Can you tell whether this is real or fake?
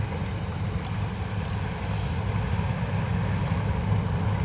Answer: real